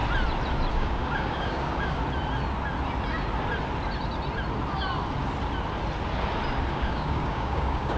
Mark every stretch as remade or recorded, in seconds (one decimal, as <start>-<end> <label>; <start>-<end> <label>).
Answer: 0.0-0.7 recorded; 0.7-2.0 remade; 2.0-6.7 recorded; 6.7-8.0 remade